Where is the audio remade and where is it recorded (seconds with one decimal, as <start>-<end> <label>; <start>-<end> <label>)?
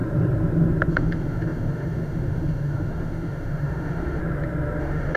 0.0-0.9 recorded; 0.9-4.2 remade; 4.2-4.8 recorded; 4.8-5.2 remade